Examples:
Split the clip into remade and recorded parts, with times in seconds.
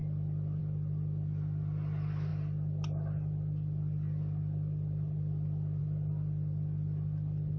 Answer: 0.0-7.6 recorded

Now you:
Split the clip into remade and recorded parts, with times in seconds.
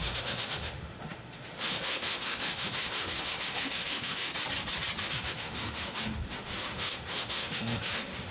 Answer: 0.0-4.3 remade; 4.3-5.0 recorded; 5.0-8.3 remade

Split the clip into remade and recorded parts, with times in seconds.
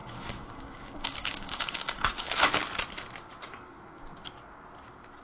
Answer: 0.0-2.3 remade; 2.3-5.2 recorded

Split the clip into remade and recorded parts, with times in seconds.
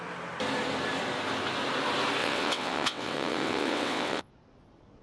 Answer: 0.0-2.2 recorded; 2.2-4.3 remade; 4.3-5.0 recorded